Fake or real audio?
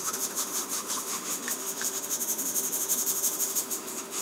fake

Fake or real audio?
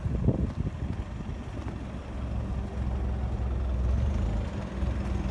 real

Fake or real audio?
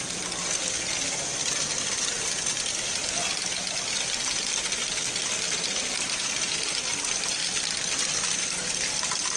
real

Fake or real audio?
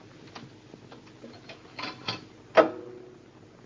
real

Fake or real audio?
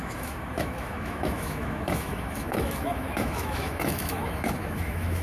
fake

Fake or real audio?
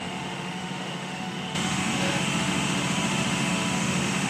fake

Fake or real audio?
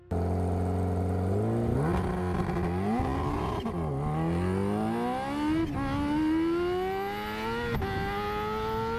real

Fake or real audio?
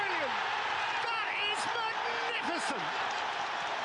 real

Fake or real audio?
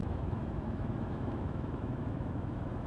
fake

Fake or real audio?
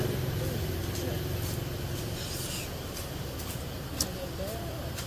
real